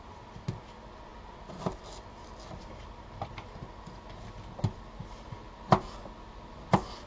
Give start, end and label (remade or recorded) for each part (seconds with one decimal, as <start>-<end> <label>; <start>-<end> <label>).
0.0-7.1 recorded